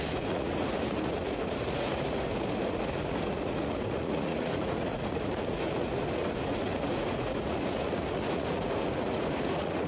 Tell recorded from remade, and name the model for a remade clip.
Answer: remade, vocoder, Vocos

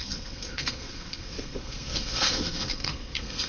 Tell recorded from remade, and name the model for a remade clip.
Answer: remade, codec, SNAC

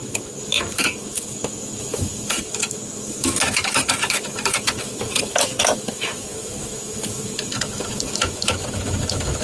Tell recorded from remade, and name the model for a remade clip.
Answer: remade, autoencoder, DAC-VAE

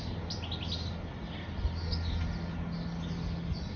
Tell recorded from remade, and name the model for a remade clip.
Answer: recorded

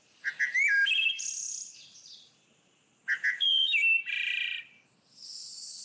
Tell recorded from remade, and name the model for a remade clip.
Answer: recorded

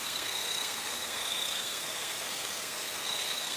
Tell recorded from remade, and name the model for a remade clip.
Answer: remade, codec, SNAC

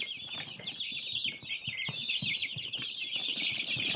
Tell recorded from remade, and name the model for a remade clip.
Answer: remade, vocoder, BigVGAN v2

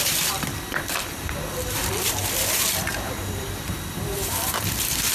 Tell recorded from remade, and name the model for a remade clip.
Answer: remade, vocoder, BigVGAN v2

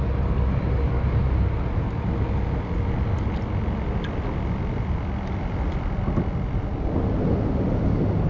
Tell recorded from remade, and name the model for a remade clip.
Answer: recorded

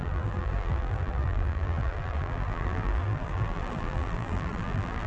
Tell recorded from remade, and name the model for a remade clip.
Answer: remade, vocoder, BigVGAN v2